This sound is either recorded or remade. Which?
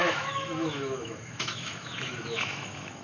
remade